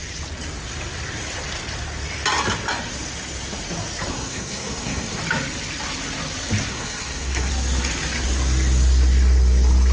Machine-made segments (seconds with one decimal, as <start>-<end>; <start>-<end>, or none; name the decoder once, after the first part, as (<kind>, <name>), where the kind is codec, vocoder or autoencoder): 4.1-5.2 (codec, SNAC); 6.7-7.5